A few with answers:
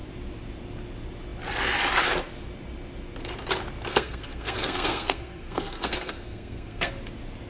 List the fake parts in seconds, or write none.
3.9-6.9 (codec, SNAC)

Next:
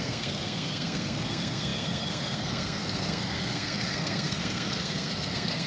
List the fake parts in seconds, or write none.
0.0-5.7 (codec, SNAC)